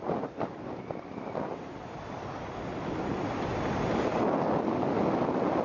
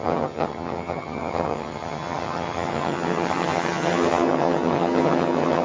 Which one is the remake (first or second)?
second